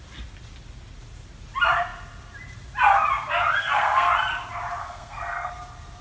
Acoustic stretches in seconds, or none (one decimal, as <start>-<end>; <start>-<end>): 0.0-3.6; 4.1-4.8; 5.5-6.0